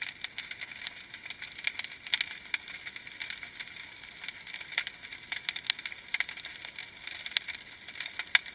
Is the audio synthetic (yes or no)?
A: no